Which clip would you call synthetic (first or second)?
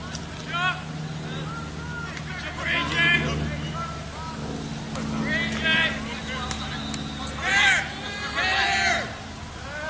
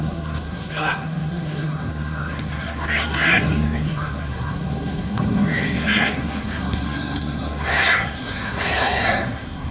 second